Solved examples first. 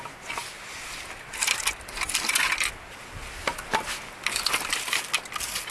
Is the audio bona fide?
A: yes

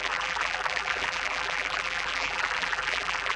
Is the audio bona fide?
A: no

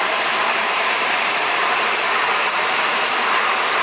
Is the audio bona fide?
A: no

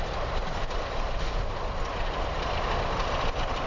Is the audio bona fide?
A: yes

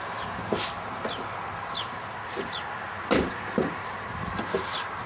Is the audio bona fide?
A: yes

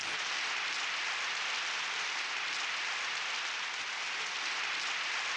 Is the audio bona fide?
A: yes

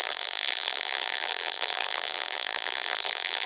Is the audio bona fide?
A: no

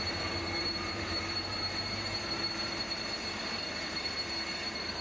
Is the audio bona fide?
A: no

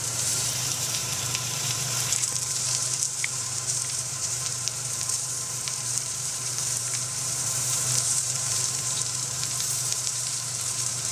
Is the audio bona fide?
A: no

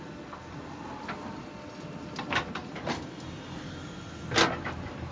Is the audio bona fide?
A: yes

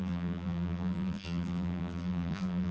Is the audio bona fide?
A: no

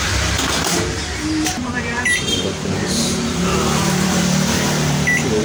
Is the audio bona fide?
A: no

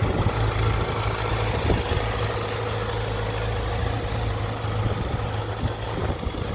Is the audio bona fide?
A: yes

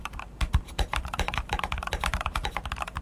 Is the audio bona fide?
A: no